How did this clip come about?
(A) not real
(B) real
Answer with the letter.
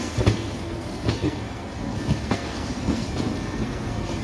A